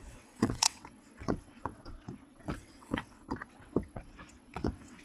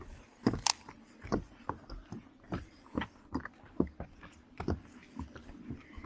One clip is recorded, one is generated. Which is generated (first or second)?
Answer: first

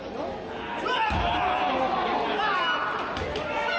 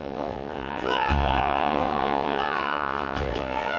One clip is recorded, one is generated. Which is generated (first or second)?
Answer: second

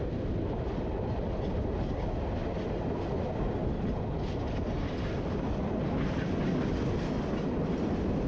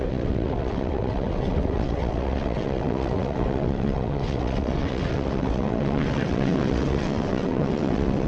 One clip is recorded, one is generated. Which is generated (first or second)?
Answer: second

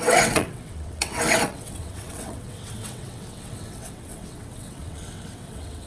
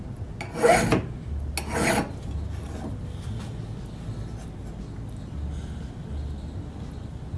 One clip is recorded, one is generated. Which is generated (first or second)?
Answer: first